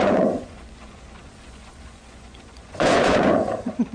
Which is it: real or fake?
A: fake